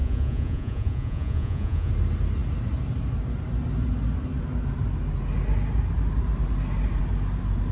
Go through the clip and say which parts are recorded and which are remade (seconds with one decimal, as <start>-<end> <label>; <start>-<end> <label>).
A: 0.0-1.9 remade; 1.9-7.7 recorded